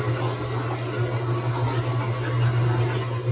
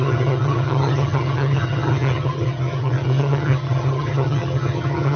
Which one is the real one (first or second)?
first